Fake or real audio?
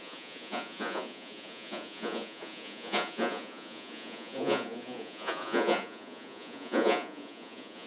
fake